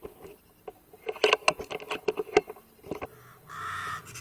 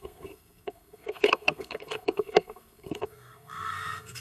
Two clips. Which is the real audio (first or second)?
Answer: first